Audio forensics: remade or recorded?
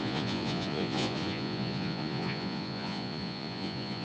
remade